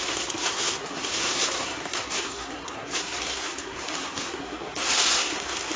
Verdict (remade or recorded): remade